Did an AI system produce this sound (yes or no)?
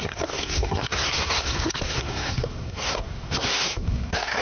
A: yes